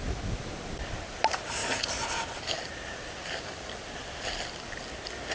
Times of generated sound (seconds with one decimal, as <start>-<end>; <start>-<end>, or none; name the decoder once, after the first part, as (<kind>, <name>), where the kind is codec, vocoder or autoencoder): none